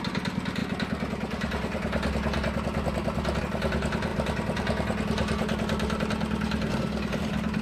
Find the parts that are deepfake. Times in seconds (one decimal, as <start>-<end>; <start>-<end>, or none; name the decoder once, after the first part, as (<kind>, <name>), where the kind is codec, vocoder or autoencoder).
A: none